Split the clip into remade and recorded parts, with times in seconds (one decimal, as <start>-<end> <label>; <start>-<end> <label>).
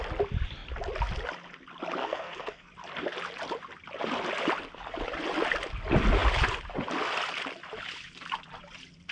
0.0-2.0 recorded; 2.0-2.7 remade; 2.7-9.1 recorded